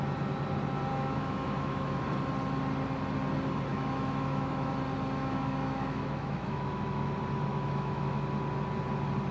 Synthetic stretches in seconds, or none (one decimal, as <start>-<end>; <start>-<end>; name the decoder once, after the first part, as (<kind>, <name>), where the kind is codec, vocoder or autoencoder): 0.9-2.0 (autoencoder, DAC-VAE); 3.7-4.7; 5.2-7.1; 7.5-8.2